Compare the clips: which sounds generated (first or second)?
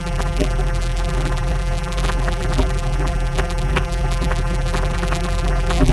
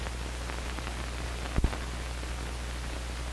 first